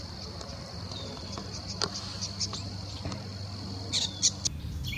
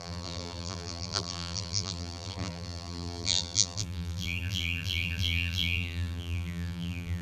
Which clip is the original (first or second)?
first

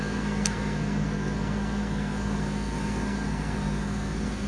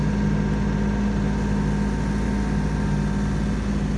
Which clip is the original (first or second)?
second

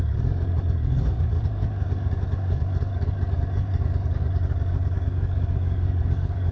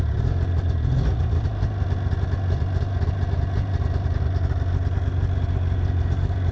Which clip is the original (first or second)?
second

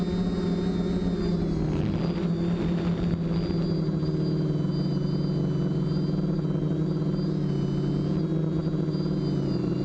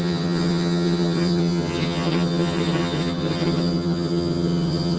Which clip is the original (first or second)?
first